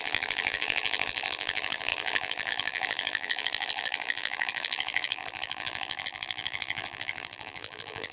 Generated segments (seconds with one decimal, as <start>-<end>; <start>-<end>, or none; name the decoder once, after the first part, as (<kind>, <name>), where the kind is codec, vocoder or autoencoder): 0.0-8.1 (vocoder, BigVGAN v2)